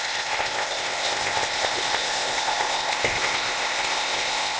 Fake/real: fake